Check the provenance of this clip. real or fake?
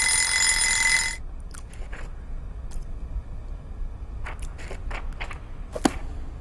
real